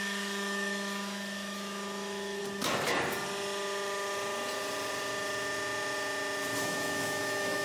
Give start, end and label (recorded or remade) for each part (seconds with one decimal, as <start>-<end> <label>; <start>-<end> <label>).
0.0-2.4 remade; 2.4-6.6 recorded; 6.6-7.6 remade